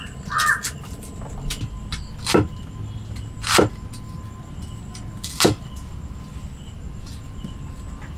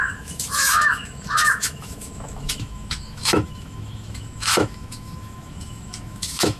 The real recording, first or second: first